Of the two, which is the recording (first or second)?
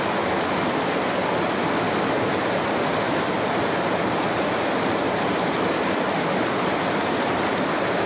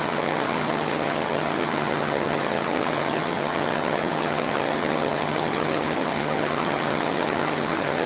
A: first